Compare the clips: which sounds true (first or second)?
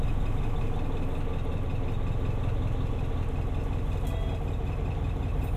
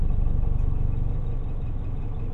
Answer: first